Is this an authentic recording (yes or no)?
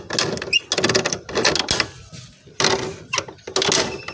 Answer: yes